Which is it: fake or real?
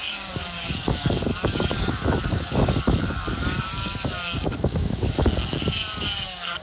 fake